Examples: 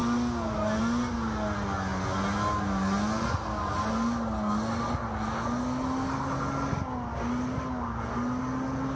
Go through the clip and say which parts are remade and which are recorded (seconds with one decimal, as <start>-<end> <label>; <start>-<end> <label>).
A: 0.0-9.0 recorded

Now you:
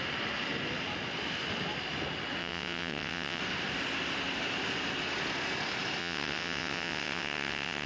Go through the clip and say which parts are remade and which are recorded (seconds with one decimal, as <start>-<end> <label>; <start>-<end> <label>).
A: 0.0-2.4 recorded; 2.4-3.4 remade; 3.4-6.0 recorded; 6.0-7.9 remade

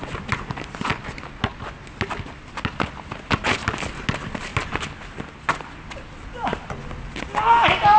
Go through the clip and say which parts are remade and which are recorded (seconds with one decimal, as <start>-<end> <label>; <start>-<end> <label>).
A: 0.0-8.0 recorded

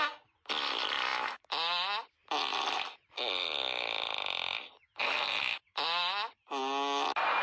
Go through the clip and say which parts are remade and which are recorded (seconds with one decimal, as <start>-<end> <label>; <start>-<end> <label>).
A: 0.0-7.4 recorded

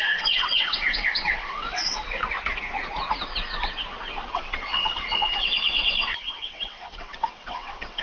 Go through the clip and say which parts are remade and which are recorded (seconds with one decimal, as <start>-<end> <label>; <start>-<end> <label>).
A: 0.0-2.2 remade; 2.2-4.3 recorded; 4.3-8.0 remade